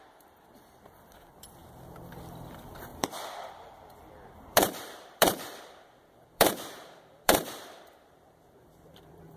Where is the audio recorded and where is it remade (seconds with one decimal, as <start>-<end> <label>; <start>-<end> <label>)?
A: 0.0-1.6 remade; 1.6-2.1 recorded; 2.1-9.4 remade